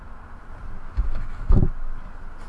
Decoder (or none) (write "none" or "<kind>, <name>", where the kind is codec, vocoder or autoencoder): none